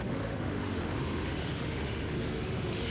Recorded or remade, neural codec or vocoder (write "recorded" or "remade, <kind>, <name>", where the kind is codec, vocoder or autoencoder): remade, autoencoder, DAC-VAE